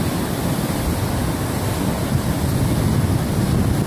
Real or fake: real